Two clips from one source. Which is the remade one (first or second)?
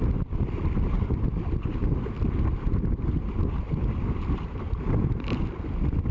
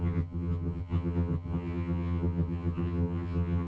second